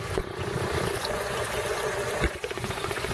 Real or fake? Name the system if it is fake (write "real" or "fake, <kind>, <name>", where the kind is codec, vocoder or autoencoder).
fake, vocoder, Vocos